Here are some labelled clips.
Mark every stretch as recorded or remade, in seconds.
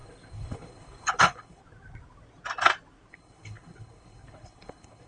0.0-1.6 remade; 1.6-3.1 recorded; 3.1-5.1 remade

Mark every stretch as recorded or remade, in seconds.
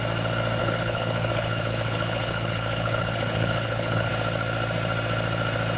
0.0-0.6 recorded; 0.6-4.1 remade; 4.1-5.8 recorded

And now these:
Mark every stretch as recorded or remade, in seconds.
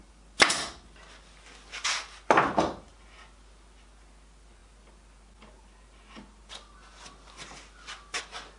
0.0-8.6 recorded